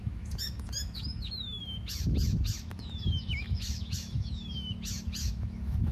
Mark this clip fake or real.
fake